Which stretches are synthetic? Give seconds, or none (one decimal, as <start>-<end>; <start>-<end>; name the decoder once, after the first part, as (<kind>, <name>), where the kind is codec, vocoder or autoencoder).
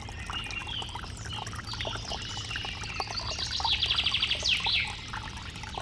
none